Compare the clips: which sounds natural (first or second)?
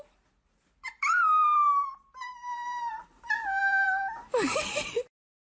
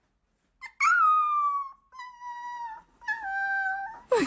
second